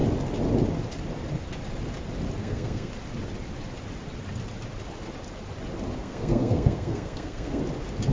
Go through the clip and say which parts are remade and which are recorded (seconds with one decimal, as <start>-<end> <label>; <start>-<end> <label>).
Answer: 0.0-2.4 recorded; 2.4-2.9 remade; 2.9-6.0 recorded; 6.0-7.6 remade; 7.6-8.1 recorded